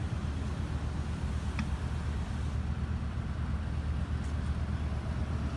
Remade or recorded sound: recorded